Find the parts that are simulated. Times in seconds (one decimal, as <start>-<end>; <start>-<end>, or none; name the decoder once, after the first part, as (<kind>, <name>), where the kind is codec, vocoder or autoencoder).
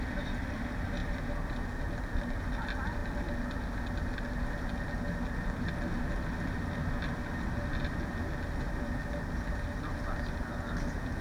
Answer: 1.0-1.5 (vocoder, BigVGAN v2)